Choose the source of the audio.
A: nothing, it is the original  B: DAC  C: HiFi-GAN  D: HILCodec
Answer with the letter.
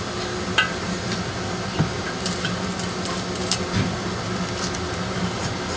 A